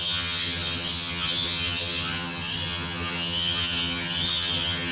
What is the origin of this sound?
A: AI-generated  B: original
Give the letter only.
A